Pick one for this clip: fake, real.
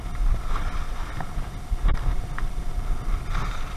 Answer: real